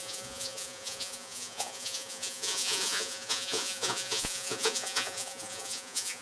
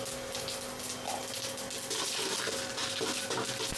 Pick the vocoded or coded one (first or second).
first